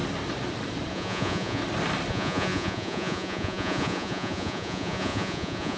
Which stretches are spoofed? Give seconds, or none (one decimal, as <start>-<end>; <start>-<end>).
0.9-1.6; 2.1-5.8